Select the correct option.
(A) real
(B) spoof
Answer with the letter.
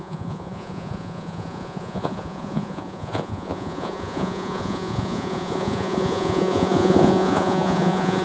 B